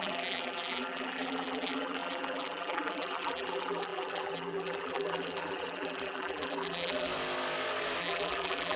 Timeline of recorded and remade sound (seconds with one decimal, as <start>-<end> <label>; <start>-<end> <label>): 0.0-7.1 remade; 7.1-8.0 recorded; 8.0-8.8 remade